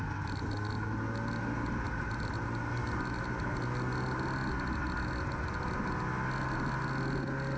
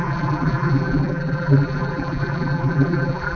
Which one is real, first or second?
first